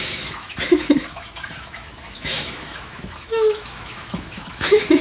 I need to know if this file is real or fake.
fake